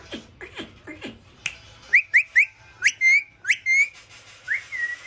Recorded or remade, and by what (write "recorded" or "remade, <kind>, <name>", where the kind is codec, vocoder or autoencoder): recorded